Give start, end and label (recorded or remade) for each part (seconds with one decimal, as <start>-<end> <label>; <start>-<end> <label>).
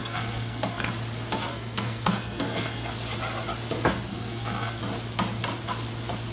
0.0-0.9 remade; 0.9-1.5 recorded; 1.5-2.9 remade; 2.9-4.1 recorded; 4.1-4.8 remade; 4.8-6.3 recorded